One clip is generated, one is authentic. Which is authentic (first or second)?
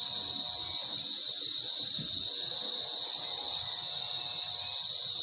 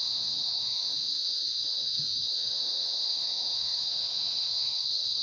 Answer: first